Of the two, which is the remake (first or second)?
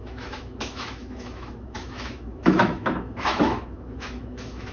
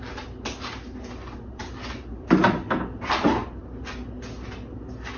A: first